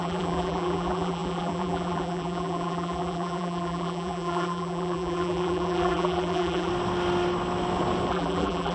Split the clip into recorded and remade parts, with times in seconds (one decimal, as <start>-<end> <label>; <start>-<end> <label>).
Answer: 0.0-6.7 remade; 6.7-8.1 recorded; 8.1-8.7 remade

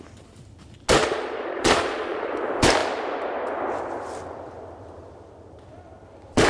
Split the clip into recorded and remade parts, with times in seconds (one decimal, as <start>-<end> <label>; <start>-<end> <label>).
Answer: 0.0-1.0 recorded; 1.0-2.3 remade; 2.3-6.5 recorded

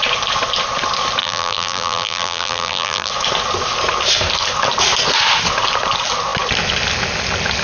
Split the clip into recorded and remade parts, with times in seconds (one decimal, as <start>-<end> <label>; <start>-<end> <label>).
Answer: 0.0-1.2 recorded; 1.2-3.1 remade; 3.1-7.6 recorded

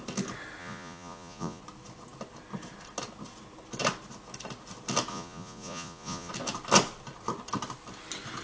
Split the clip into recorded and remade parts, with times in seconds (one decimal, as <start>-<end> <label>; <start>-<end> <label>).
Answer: 0.0-0.6 recorded; 0.6-1.6 remade; 1.6-5.1 recorded; 5.1-6.3 remade; 6.3-8.4 recorded